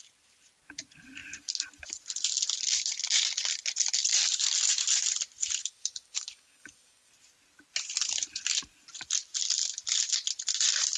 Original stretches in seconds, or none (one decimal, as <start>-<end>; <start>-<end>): 0.0-5.6; 7.1-11.0